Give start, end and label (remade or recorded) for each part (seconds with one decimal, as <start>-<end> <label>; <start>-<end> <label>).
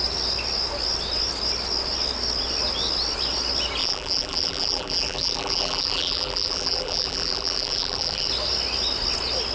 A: 0.0-3.8 recorded; 3.8-8.3 remade; 8.3-9.5 recorded